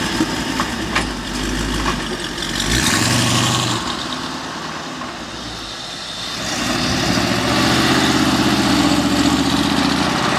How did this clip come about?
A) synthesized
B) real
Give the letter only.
B